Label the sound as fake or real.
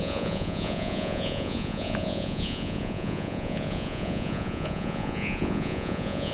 fake